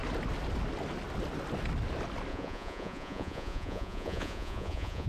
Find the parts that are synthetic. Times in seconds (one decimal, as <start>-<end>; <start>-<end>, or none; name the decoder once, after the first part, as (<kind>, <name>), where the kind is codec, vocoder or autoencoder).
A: 2.3-5.1 (vocoder, Vocos)